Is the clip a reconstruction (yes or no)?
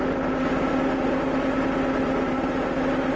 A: no